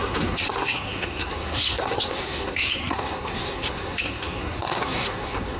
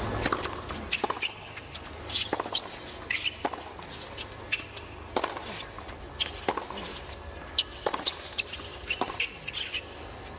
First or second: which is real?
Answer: second